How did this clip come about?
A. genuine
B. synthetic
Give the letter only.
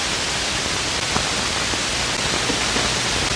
A